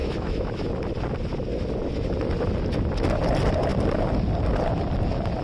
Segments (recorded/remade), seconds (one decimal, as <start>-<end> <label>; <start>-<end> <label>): 0.0-0.6 remade; 0.6-5.4 recorded